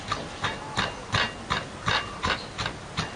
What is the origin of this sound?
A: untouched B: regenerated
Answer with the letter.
A